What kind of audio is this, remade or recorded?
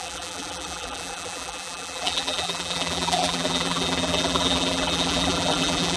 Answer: remade